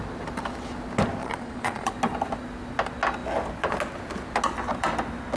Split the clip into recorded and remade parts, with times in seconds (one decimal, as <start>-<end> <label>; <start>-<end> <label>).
0.0-1.2 recorded; 1.2-1.9 remade; 1.9-5.4 recorded